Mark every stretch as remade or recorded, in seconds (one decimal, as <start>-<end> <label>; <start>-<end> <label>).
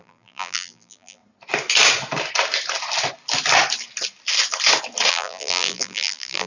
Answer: 0.0-1.2 remade; 1.2-5.1 recorded; 5.1-6.5 remade